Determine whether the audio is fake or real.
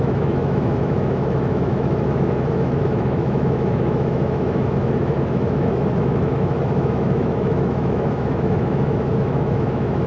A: fake